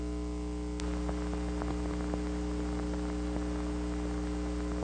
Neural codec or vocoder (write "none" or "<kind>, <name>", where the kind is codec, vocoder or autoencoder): none